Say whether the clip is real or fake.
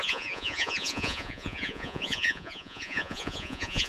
fake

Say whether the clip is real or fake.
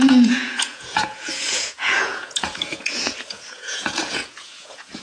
fake